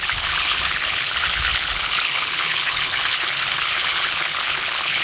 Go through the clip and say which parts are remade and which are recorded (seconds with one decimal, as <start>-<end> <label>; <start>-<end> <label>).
0.0-5.0 remade